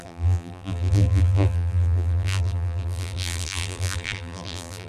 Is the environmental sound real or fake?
fake